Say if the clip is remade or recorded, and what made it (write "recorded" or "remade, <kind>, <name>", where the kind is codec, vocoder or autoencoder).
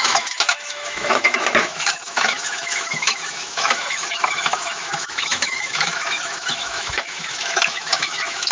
remade, autoencoder, DAC-VAE